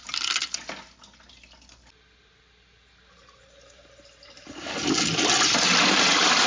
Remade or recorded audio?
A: recorded